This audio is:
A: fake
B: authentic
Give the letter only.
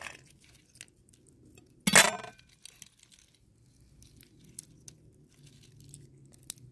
B